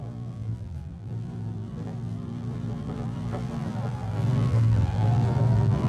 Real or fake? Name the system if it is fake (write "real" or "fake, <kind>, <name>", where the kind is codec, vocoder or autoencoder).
fake, vocoder, BigVGAN v2